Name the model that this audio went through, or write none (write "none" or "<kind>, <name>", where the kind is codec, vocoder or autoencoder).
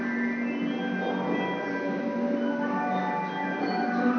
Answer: none